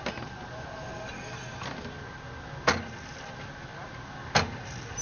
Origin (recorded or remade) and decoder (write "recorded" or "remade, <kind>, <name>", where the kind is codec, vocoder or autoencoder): recorded